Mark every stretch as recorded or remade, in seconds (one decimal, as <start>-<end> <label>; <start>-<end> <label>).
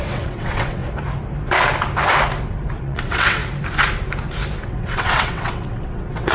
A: 0.0-0.8 remade; 0.8-2.8 recorded; 2.8-3.4 remade; 3.4-4.6 recorded; 4.6-6.3 remade